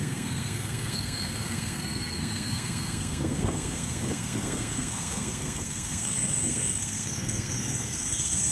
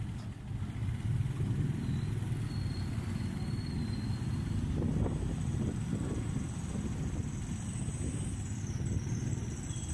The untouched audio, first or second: second